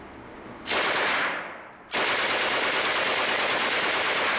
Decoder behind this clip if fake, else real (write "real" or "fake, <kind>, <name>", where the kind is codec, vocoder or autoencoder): real